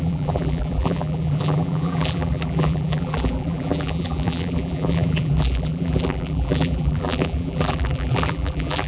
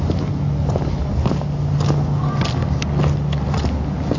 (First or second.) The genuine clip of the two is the second